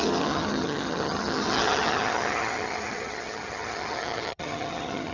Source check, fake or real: fake